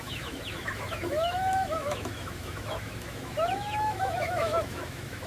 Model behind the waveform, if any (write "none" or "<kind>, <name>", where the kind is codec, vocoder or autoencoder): autoencoder, DAC-VAE